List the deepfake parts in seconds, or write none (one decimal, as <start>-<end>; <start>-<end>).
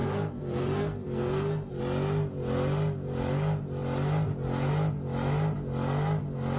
0.0-1.8